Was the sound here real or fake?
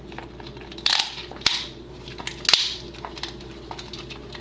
real